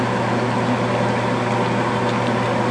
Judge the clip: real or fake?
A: real